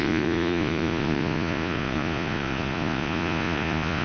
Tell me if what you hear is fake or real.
fake